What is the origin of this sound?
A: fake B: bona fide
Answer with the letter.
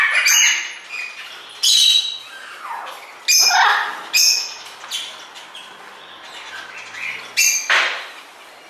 B